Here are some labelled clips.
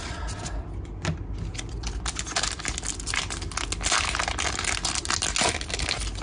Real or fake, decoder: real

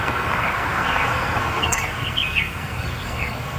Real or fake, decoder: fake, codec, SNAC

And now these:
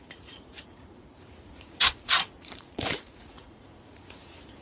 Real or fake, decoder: fake, vocoder, Vocos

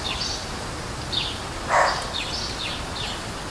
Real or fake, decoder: real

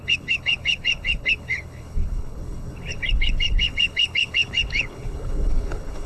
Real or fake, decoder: fake, codec, HILCodec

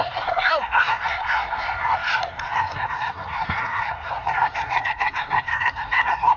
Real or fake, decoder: fake, codec, SNAC